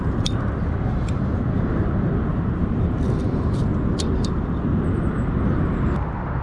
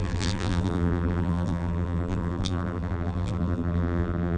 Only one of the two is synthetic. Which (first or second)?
second